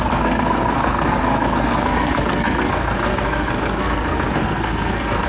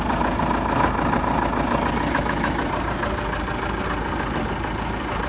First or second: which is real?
second